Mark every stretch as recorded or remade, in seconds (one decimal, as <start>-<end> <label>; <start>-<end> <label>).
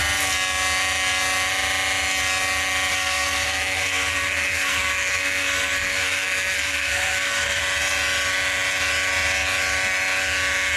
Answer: 0.0-2.9 recorded; 2.9-7.6 remade; 7.6-10.8 recorded